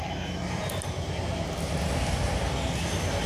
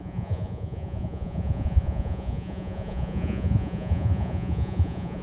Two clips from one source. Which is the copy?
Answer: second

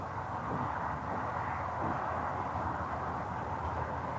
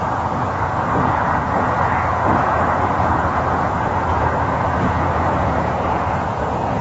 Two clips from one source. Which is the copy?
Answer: second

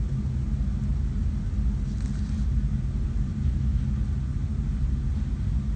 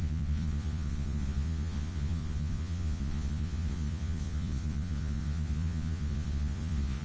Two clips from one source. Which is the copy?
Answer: second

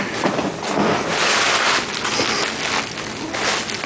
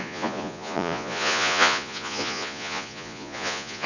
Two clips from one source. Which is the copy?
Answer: second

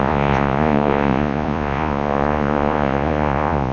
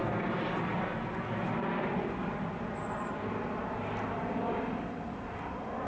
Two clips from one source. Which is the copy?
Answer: first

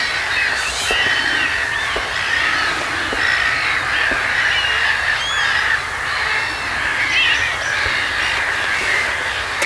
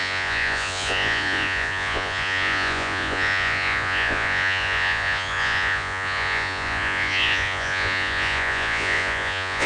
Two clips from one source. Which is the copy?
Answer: second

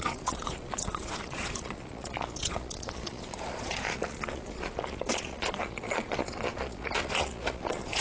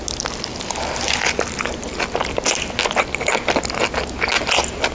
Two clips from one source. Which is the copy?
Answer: first